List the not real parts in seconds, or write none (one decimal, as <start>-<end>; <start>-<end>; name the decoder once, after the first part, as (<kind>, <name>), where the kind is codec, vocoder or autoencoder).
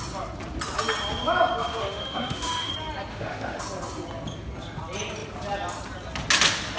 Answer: 1.8-2.7 (autoencoder, DAC-VAE); 3.1-3.6